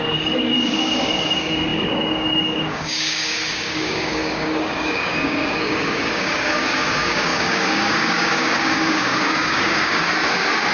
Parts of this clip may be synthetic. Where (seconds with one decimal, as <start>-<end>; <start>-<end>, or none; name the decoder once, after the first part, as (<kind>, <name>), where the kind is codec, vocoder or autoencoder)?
0.0-10.7 (codec, DAC)